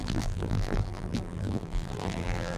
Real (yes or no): no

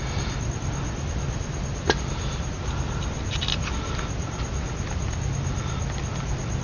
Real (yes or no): yes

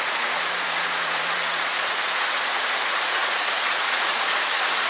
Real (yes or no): no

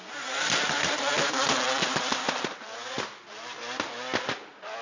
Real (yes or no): yes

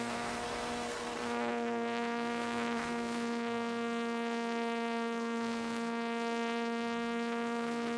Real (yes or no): no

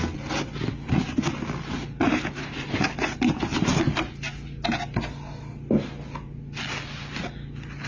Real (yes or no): yes